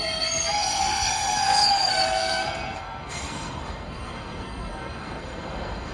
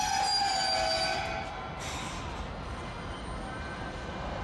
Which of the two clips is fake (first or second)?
first